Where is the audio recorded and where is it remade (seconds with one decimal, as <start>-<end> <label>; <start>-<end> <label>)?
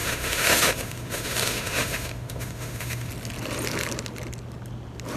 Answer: 0.0-3.1 remade; 3.1-5.2 recorded